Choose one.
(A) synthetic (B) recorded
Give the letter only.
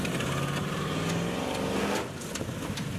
B